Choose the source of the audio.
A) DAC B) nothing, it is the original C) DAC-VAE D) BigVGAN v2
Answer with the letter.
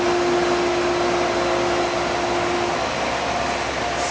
B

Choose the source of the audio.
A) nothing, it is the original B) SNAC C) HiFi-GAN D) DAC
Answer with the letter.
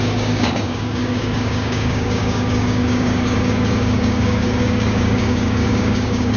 D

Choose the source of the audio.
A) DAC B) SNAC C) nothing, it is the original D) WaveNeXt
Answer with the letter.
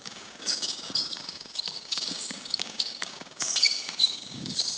A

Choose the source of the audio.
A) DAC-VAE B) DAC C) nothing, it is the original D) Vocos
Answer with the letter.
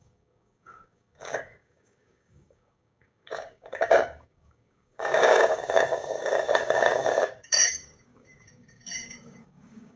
B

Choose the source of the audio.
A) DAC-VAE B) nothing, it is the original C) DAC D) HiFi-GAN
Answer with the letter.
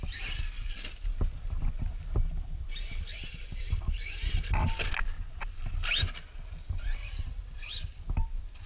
B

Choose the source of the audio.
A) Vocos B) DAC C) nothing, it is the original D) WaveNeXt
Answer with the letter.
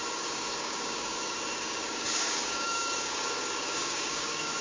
B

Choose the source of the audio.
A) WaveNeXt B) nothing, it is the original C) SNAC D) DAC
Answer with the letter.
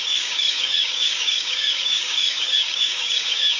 D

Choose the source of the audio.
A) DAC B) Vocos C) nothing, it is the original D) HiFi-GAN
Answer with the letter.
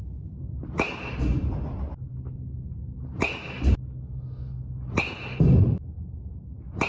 C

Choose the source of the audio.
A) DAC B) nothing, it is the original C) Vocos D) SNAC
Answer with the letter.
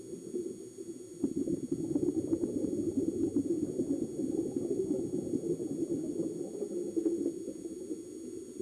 B